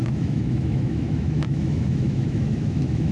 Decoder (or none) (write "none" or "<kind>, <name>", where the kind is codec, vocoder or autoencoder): autoencoder, DAC-VAE